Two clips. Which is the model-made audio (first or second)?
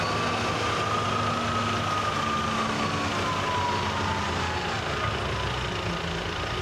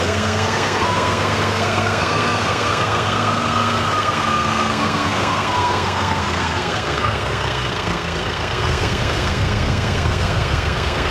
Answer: second